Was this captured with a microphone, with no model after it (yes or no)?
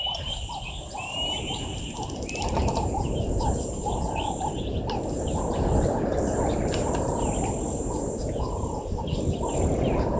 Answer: yes